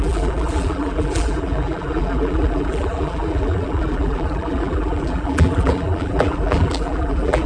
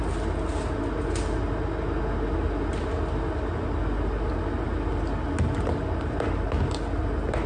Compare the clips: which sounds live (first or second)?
second